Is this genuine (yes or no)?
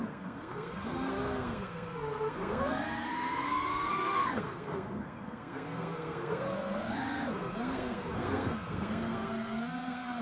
no